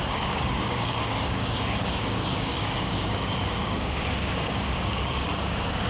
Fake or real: fake